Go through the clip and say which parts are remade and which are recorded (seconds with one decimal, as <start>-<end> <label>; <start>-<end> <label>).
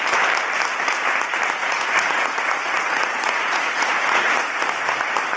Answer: 0.0-1.6 recorded; 1.6-4.6 remade; 4.6-5.4 recorded